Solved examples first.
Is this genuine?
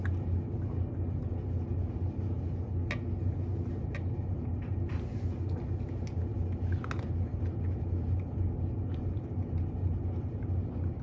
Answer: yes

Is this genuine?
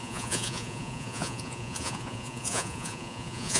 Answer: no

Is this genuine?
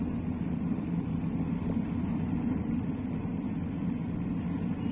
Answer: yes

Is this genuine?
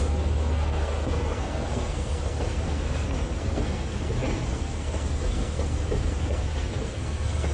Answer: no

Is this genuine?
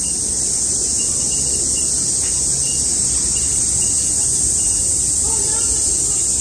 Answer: yes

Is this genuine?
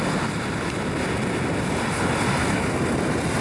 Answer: yes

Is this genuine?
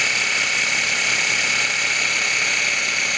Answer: yes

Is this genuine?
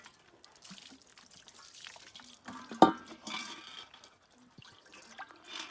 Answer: yes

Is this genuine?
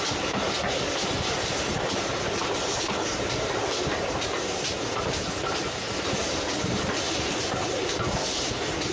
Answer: yes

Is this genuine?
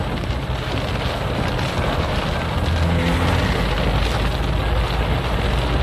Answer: yes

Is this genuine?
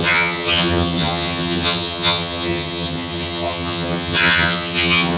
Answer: no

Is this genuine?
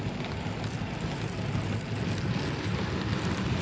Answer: yes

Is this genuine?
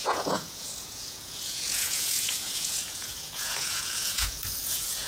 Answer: no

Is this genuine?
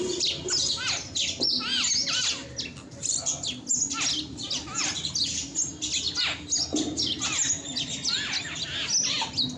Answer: yes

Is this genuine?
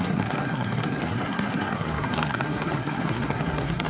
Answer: no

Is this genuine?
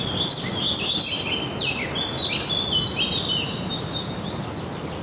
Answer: yes